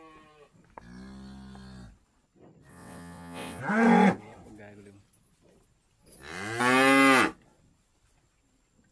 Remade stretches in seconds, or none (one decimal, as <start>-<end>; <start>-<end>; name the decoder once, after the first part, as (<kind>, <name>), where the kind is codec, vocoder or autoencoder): 2.7-3.6 (vocoder, WaveNeXt)